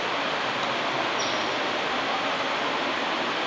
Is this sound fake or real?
real